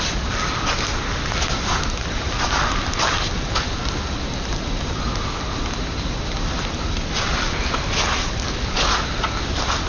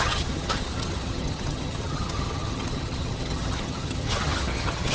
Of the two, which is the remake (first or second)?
second